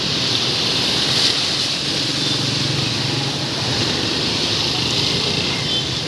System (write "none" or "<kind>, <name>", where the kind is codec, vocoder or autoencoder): none